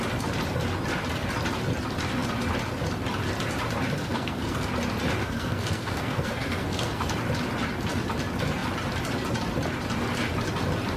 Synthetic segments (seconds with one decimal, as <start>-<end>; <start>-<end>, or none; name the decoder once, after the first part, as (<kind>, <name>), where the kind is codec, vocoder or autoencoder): 4.0-4.7 (codec, SNAC); 5.2-7.2